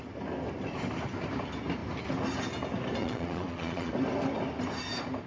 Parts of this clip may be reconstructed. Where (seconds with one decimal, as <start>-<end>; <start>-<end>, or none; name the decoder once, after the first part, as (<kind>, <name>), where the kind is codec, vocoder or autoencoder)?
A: 3.0-3.9 (vocoder, Vocos)

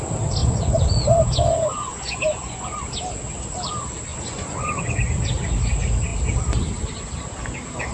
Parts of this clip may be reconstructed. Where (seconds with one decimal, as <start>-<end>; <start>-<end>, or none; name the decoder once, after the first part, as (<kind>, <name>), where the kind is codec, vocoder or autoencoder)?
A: 0.4-2.8 (vocoder, Vocos); 4.1-4.8

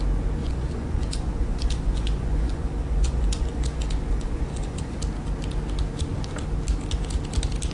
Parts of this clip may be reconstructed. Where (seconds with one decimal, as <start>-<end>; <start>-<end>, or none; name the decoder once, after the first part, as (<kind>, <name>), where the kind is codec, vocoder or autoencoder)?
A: 0.4-5.0 (vocoder, Vocos)

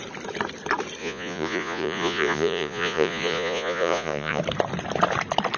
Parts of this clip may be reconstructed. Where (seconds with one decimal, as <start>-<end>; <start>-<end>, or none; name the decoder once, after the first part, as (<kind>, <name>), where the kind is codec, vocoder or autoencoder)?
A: 1.0-4.4 (vocoder, Vocos)

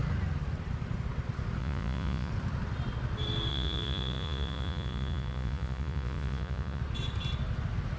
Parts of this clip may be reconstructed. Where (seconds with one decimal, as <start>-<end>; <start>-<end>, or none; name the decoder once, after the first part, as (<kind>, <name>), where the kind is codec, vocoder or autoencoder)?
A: 1.6-2.3 (vocoder, Vocos); 3.5-6.8

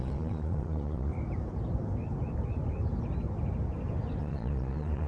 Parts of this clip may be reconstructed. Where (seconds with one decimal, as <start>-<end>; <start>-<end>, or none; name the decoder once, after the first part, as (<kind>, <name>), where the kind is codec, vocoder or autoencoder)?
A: 0.0-1.1 (vocoder, Vocos); 4.2-5.1